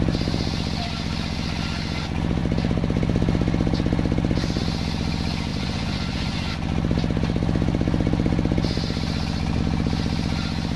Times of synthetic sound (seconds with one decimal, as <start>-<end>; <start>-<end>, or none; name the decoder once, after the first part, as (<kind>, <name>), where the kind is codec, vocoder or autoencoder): 5.5-6.5 (vocoder, Vocos)